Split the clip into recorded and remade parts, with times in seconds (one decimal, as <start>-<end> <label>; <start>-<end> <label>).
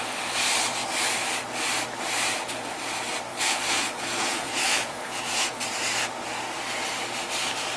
0.0-3.3 recorded; 3.3-5.6 remade; 5.6-7.8 recorded